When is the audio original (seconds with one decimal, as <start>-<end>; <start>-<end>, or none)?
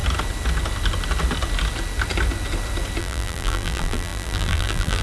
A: 0.0-3.0